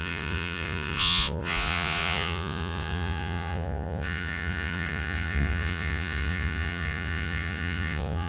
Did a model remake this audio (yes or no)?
yes